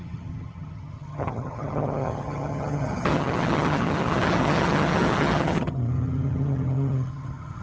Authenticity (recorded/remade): remade